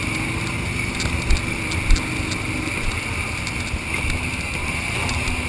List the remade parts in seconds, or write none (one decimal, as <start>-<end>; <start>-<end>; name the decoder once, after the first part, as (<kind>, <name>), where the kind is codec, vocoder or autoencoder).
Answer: none